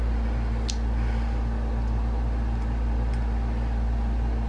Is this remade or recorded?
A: recorded